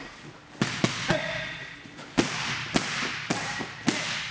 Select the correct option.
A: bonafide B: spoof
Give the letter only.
A